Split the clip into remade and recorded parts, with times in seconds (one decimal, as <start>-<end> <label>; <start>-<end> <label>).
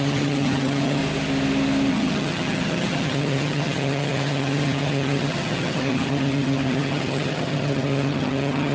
0.0-1.0 remade; 1.0-1.9 recorded; 1.9-8.7 remade